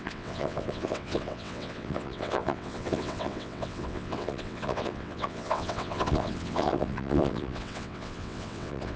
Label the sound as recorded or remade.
remade